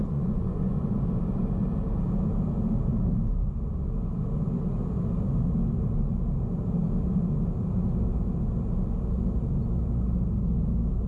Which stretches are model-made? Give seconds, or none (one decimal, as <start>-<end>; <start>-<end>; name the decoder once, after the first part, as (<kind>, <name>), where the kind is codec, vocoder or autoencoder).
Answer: 0.0-0.8 (vocoder, Vocos)